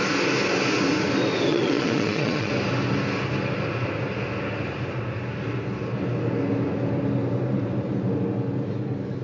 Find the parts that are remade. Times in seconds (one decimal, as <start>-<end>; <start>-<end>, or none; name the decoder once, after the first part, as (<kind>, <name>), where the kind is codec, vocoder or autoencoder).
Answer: 1.5-2.5 (vocoder, Vocos)